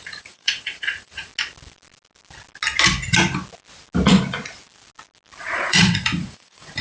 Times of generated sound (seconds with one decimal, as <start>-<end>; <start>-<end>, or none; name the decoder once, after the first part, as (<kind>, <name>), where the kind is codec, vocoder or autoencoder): 0.0-1.3 (vocoder, Vocos); 5.4-6.8